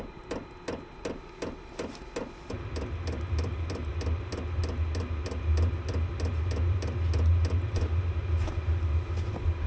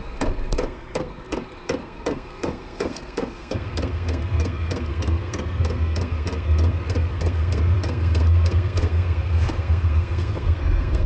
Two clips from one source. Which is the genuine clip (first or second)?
first